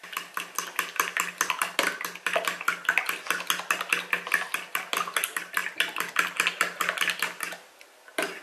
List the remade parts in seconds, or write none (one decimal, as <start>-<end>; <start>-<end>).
none